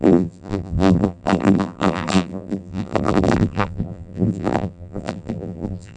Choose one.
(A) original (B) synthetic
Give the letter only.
B